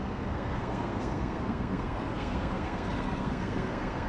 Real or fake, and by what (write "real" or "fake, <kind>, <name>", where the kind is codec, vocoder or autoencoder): fake, codec, SNAC